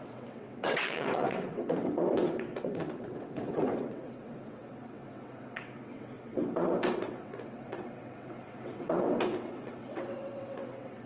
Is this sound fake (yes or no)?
yes